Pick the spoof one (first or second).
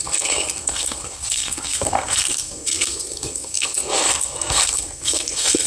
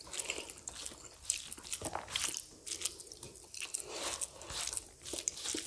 first